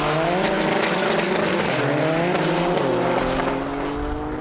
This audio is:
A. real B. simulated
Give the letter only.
A